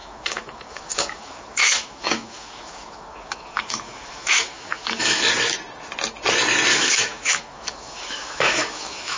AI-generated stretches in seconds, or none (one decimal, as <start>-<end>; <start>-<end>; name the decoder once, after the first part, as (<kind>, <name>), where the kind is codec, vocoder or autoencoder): 0.0-5.2 (autoencoder, DAC-VAE); 6.7-9.2